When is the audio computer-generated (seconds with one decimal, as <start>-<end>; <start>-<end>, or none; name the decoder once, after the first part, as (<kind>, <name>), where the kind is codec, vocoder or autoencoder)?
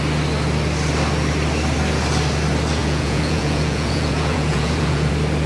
2.8-5.1 (vocoder, Vocos)